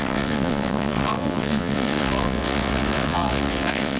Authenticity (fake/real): fake